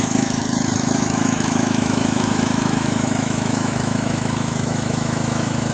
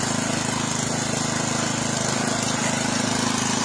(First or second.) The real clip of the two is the second